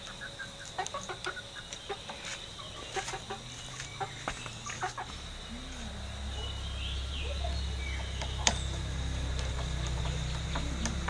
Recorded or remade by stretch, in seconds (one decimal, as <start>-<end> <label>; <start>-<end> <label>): 0.0-11.1 recorded